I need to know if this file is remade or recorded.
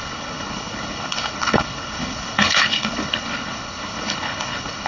remade